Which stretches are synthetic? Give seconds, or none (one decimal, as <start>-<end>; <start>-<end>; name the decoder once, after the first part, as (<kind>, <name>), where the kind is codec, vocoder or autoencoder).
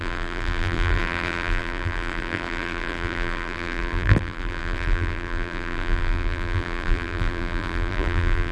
0.0-8.5 (vocoder, BigVGAN v2)